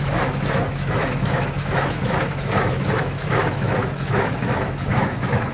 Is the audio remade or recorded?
remade